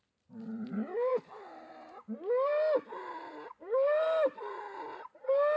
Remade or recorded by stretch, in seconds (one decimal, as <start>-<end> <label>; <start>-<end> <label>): 0.0-1.1 recorded; 1.1-1.7 remade; 1.7-2.9 recorded; 2.9-5.1 remade; 5.1-5.6 recorded